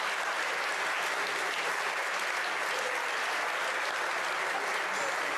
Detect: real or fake real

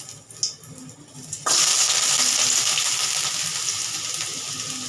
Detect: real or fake real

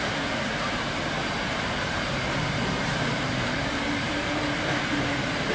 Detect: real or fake fake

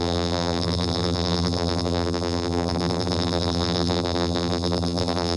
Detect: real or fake fake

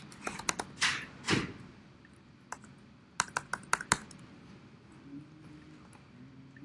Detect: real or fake real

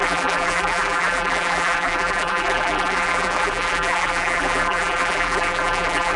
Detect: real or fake fake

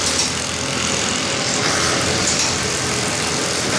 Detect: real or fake fake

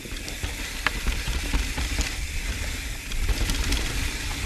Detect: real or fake real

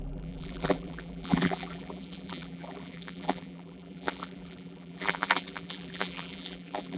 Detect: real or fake fake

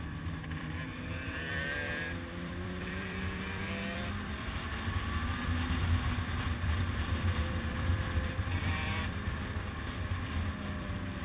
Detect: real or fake fake